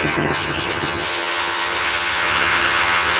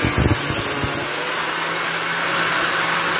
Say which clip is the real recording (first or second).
second